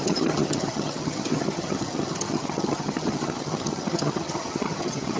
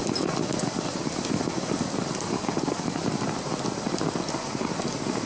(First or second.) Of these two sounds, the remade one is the first